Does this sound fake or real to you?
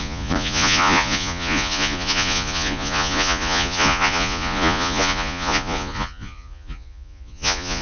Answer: fake